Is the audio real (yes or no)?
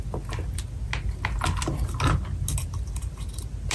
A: yes